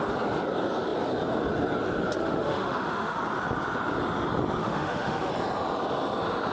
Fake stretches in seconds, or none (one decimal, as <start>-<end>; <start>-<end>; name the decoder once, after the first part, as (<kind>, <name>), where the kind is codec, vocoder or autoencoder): 2.2-3.2 (autoencoder, DAC-VAE); 4.6-5.3